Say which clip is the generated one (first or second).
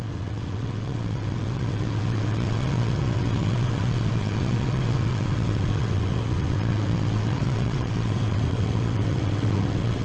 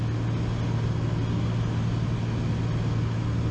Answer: first